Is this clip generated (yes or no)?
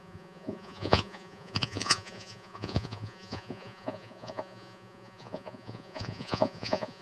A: yes